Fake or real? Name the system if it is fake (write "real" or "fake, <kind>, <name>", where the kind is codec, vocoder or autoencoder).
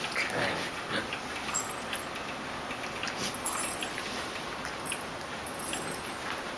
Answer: real